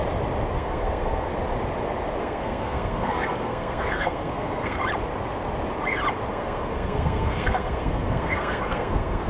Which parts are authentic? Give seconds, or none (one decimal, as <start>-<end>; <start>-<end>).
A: 0.0-0.5; 1.3-2.2; 4.8-6.3